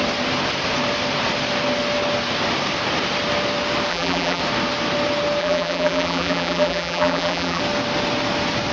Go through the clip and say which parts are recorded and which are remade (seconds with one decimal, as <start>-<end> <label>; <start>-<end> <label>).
0.0-3.9 recorded; 3.9-4.4 remade; 4.4-5.4 recorded; 5.4-7.6 remade; 7.6-8.7 recorded

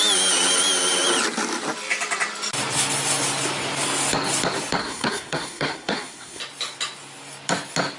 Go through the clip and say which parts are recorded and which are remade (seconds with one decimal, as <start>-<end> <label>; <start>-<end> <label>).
0.0-4.8 recorded; 4.8-6.4 remade; 6.4-8.0 recorded

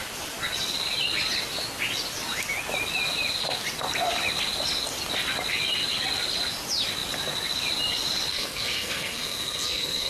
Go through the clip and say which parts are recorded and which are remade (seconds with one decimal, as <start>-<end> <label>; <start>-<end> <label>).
0.0-8.3 recorded; 8.3-10.1 remade